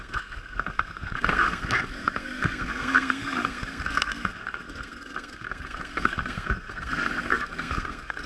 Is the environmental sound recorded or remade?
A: remade